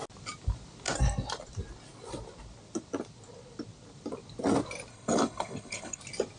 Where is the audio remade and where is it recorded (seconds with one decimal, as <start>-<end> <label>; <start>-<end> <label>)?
0.0-4.9 recorded; 4.9-6.0 remade; 6.0-6.4 recorded